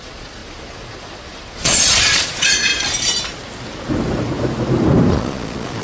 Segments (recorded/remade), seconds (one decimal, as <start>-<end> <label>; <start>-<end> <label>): 0.0-2.7 remade; 2.7-5.1 recorded; 5.1-5.8 remade

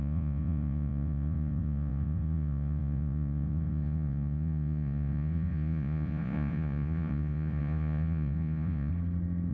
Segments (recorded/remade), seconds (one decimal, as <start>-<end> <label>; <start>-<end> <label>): 0.0-8.9 remade; 8.9-9.5 recorded

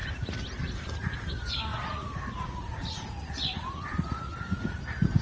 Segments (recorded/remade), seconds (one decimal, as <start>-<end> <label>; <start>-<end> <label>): 0.0-1.7 recorded; 1.7-4.8 remade; 4.8-5.2 recorded

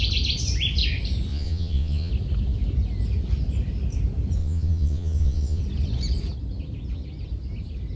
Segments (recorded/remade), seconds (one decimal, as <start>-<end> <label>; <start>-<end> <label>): 0.0-1.3 recorded; 1.3-2.1 remade; 2.1-4.4 recorded; 4.4-5.6 remade; 5.6-8.0 recorded

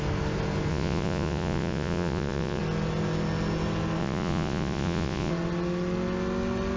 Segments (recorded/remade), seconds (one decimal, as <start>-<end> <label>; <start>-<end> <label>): 0.0-0.7 recorded; 0.7-2.6 remade; 2.6-4.0 recorded; 4.0-5.3 remade; 5.3-6.8 recorded

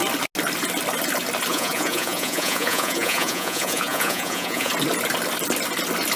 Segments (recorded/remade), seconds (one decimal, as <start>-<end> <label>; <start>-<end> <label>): 0.0-1.5 recorded; 1.5-4.7 remade; 4.7-6.2 recorded